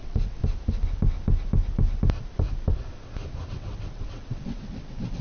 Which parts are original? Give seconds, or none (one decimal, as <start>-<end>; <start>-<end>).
0.4-3.5